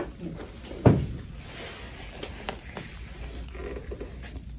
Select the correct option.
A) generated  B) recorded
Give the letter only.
B